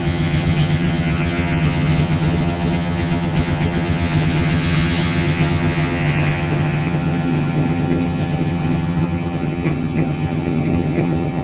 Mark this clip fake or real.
fake